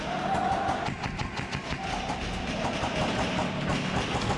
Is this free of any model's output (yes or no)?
yes